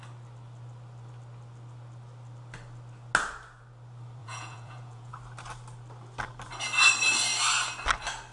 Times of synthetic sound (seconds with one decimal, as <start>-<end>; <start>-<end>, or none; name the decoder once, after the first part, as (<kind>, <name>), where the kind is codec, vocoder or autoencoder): 4.2-5.1 (vocoder, Vocos)